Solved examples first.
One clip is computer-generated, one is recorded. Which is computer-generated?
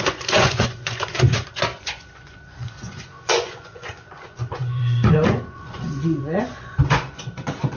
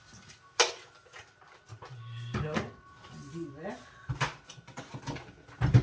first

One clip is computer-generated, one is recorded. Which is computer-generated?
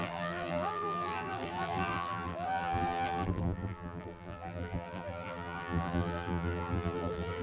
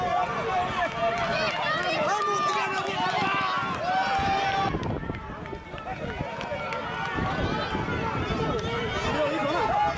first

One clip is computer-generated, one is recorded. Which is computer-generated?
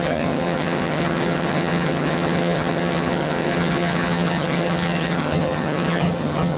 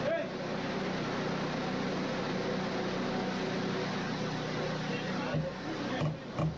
first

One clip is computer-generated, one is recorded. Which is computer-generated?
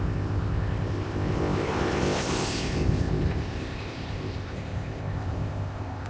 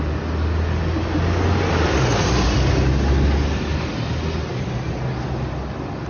first